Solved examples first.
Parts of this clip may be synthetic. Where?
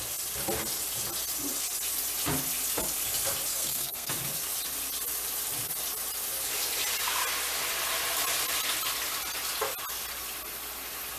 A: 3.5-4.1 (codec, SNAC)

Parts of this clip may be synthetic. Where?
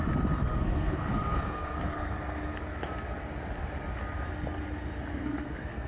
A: 0.4-2.1 (codec, SNAC); 5.1-5.9